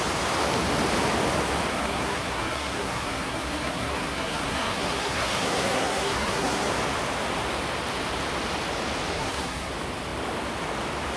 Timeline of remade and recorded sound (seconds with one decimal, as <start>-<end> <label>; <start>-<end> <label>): 0.0-1.7 recorded; 1.7-6.7 remade; 6.7-9.1 recorded; 9.1-9.7 remade; 9.7-11.2 recorded